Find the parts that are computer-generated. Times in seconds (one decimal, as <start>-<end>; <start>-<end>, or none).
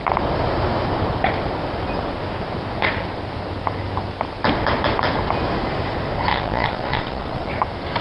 6.3-7.5